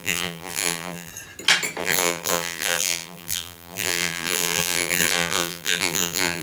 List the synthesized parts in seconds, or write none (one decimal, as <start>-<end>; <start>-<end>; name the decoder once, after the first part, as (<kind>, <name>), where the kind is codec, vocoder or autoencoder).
0.0-1.1 (vocoder, BigVGAN v2); 1.8-6.4